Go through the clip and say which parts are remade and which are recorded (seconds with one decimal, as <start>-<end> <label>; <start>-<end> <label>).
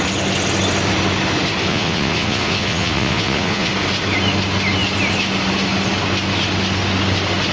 0.0-1.7 recorded; 1.7-3.7 remade; 3.7-7.5 recorded